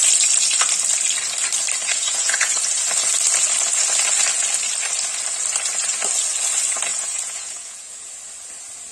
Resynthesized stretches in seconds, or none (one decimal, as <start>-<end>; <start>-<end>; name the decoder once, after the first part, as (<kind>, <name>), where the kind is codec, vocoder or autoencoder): 1.9-2.5 (vocoder, Vocos); 6.9-8.1